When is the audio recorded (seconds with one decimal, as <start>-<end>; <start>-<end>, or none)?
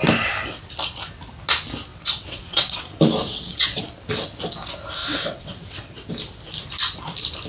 0.0-1.9; 2.8-3.3; 3.8-5.0; 6.1-7.5